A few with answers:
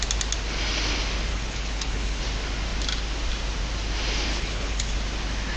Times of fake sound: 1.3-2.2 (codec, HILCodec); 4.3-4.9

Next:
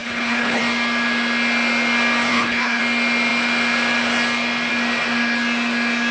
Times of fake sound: 0.0-0.6 (codec, HILCodec); 2.3-2.8

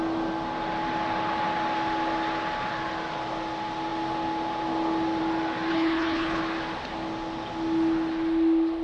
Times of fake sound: 5.7-6.4 (codec, HILCodec)

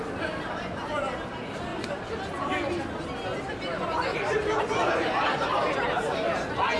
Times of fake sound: none

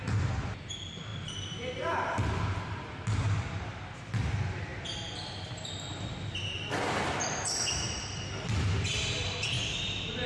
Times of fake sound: none

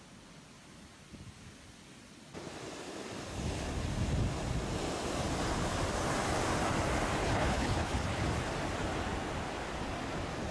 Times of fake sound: 7.2-8.2 (codec, HILCodec)